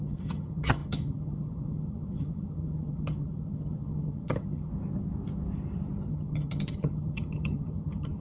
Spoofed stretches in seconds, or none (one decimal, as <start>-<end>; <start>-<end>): 0.0-4.7; 6.1-8.2